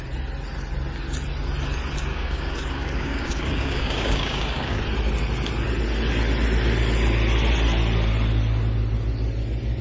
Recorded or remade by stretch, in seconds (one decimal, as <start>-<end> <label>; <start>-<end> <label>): 0.0-2.1 recorded; 2.1-4.8 remade; 4.8-9.8 recorded